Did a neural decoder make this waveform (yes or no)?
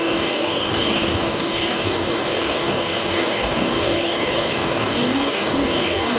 yes